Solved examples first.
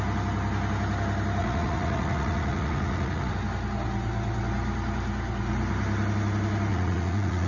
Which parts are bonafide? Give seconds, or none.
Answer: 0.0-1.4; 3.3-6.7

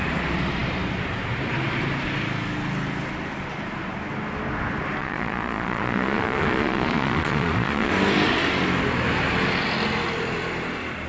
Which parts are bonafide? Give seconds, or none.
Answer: 0.0-5.0; 7.9-11.1